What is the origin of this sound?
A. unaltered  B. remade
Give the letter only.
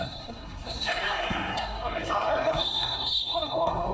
B